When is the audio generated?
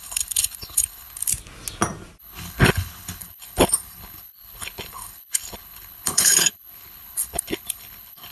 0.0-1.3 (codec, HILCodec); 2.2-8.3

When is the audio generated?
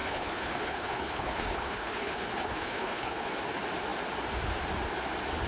0.0-3.3 (codec, HILCodec)